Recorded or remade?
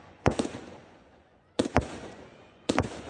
remade